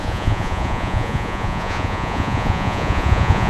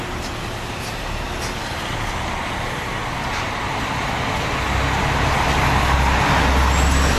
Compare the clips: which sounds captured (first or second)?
second